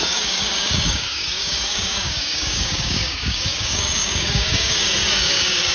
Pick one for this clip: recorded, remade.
remade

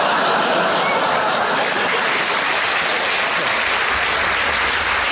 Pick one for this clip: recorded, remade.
recorded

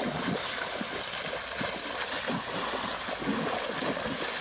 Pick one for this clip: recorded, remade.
recorded